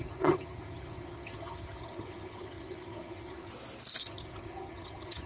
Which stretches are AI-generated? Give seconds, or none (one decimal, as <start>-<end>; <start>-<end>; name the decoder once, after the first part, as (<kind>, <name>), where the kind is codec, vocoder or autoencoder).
0.0-3.5 (vocoder, HiFi-GAN); 4.0-5.3

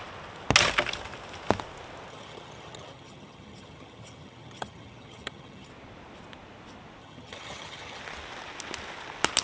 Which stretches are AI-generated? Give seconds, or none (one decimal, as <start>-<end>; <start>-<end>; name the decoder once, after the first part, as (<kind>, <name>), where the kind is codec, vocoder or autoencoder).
2.1-5.7 (vocoder, HiFi-GAN); 7.0-8.0

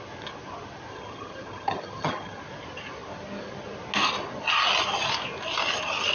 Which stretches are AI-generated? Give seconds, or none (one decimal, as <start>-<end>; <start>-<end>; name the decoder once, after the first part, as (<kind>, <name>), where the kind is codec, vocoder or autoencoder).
0.9-2.4 (vocoder, HiFi-GAN)